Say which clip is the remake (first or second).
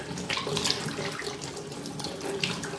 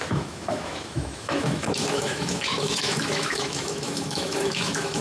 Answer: second